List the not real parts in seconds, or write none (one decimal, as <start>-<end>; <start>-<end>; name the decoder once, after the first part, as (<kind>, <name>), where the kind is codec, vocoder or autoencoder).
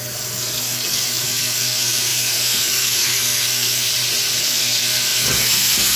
0.0-3.9 (codec, SNAC); 4.4-6.0